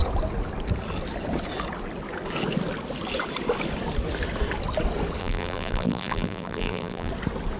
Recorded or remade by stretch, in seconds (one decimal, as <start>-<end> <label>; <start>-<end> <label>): 0.0-5.2 recorded; 5.2-7.1 remade; 7.1-7.6 recorded